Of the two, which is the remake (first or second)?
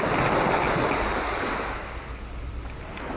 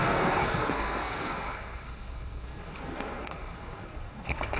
second